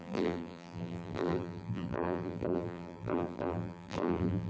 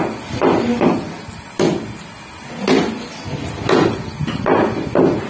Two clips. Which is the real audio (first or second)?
second